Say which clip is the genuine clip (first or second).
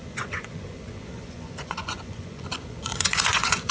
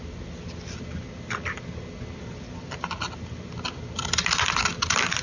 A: second